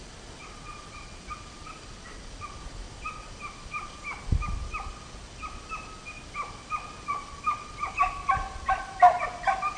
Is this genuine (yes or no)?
yes